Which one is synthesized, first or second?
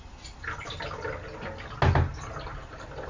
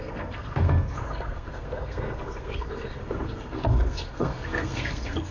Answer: second